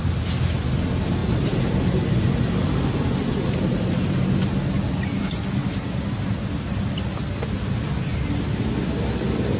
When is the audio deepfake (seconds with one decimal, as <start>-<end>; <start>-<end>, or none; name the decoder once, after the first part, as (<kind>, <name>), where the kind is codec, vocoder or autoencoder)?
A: 5.6-6.8 (vocoder, BigVGAN v2)